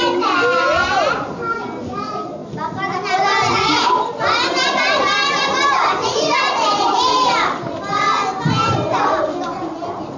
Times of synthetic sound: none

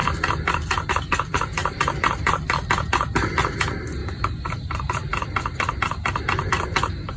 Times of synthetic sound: 0.0-0.9; 1.6-2.7; 4.0-4.9